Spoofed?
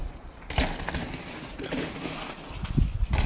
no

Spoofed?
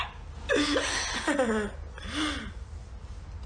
no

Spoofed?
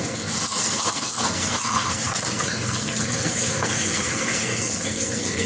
yes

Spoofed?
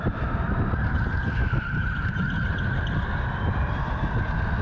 no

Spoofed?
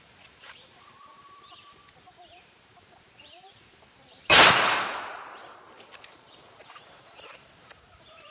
yes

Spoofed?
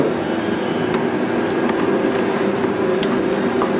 no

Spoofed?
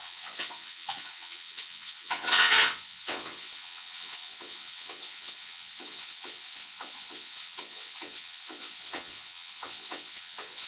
yes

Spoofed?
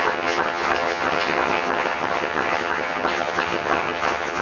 yes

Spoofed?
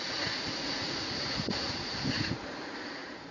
yes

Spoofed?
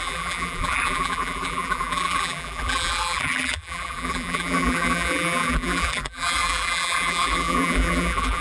yes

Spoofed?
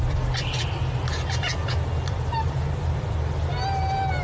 no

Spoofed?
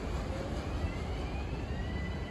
no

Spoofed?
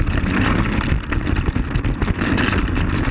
no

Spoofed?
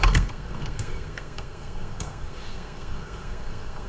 yes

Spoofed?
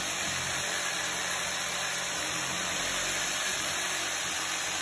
no